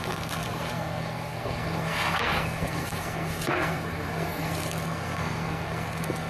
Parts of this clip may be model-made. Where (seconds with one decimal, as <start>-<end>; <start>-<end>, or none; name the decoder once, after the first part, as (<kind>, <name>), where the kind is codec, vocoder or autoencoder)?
0.0-6.3 (codec, SNAC)